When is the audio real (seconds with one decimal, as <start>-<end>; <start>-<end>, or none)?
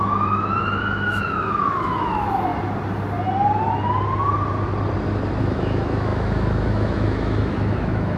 2.5-5.4